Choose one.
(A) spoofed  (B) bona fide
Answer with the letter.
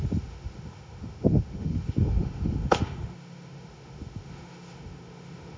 A